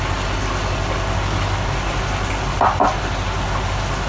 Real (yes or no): yes